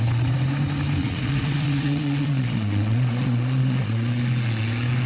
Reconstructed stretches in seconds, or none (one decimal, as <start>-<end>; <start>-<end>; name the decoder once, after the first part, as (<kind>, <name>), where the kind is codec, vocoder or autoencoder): 1.0-4.1 (vocoder, Vocos)

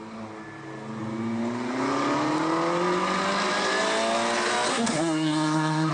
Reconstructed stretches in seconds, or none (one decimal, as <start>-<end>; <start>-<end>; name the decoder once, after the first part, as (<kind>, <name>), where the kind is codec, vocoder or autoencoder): 4.7-5.9 (codec, SNAC)